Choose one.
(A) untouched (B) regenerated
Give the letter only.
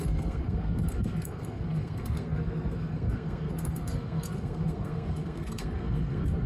B